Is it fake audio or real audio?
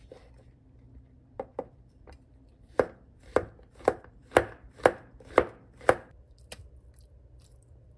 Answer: fake